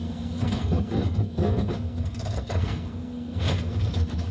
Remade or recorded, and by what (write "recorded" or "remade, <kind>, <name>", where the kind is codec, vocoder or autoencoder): remade, codec, SNAC